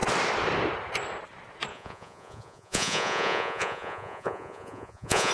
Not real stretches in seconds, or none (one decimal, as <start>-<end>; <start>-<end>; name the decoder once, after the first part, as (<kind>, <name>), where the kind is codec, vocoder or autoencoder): 1.7-5.3 (vocoder, Vocos)